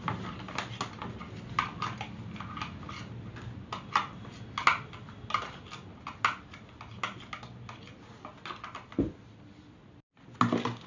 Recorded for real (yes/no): yes